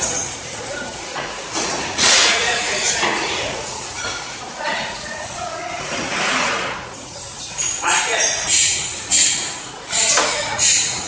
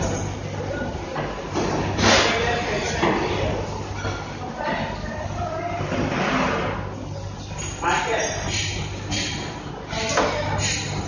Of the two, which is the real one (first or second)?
second